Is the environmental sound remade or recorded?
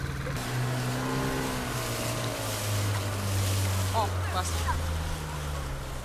recorded